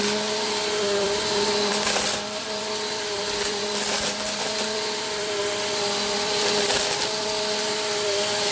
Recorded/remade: remade